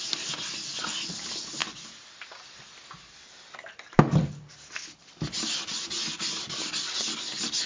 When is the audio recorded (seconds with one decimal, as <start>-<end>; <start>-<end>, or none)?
0.0-7.7